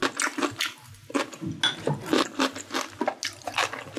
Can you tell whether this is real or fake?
real